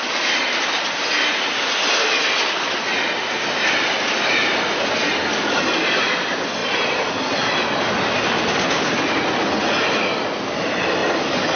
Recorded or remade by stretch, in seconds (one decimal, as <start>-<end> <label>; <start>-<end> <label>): 0.0-11.6 recorded